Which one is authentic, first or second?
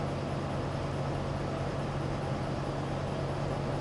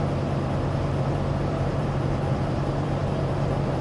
first